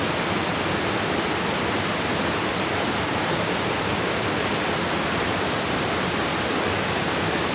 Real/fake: real